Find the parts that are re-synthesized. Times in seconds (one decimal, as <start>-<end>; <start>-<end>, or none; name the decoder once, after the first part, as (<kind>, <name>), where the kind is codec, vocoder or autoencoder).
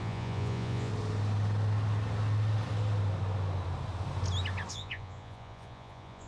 0.0-0.9 (vocoder, Vocos); 4.7-6.3